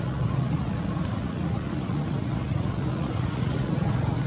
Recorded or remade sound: remade